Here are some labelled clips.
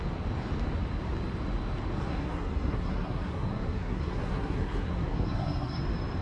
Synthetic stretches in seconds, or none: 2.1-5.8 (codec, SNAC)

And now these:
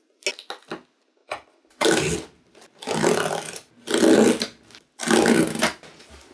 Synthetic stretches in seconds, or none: none

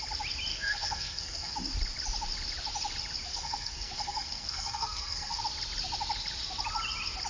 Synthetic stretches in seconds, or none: 0.5-1.5 (codec, SNAC); 3.3-5.4

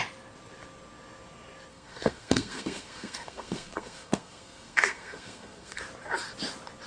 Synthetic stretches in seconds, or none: 1.7-5.8 (codec, SNAC)

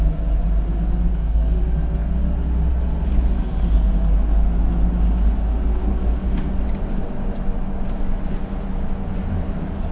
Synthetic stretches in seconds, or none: 1.1-1.6 (codec, SNAC); 5.9-6.6

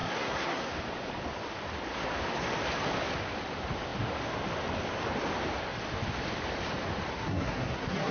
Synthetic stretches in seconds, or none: 0.0-0.7 (codec, SNAC); 7.1-8.1